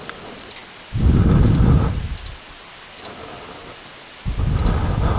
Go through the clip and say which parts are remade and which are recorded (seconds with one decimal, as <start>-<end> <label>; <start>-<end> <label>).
0.0-5.2 recorded